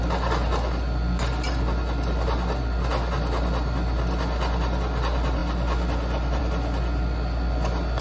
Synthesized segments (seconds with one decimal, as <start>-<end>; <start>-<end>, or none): none